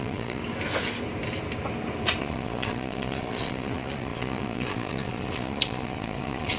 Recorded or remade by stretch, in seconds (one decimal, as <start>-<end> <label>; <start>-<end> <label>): 0.0-0.4 remade; 0.4-2.2 recorded; 2.2-6.6 remade